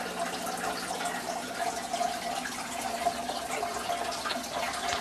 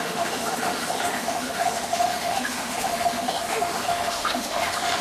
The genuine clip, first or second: first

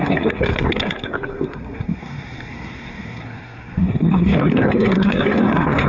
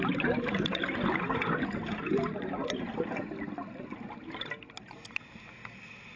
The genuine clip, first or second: second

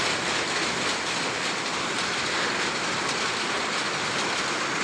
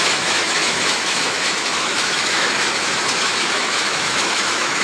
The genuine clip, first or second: first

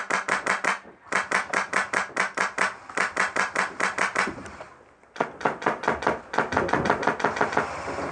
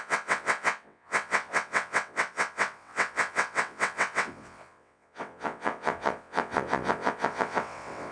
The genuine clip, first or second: first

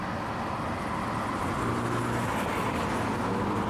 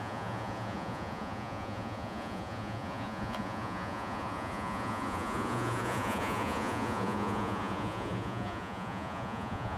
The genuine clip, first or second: first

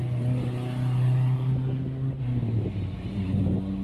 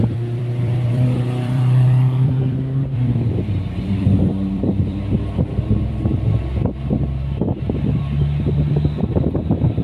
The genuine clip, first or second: first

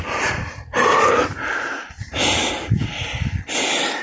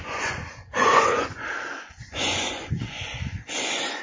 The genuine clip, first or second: first